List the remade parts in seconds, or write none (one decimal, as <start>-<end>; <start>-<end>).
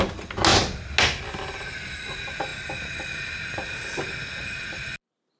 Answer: none